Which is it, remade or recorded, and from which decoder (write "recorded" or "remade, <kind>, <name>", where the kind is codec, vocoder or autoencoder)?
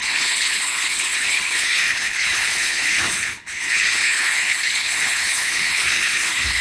remade, codec, HILCodec